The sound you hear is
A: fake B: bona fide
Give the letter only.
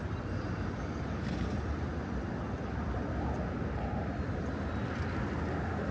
B